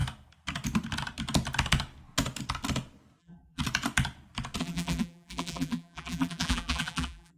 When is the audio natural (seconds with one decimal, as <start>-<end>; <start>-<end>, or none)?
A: 0.0-3.2; 3.6-4.6